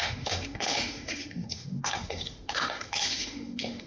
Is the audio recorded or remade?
remade